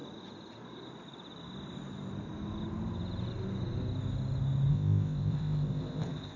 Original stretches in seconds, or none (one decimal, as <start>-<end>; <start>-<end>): 0.0-4.7